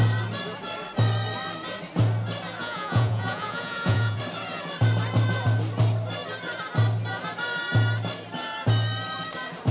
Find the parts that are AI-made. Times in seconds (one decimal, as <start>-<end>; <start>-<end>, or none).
2.6-4.2